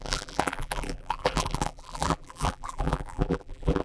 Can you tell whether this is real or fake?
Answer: fake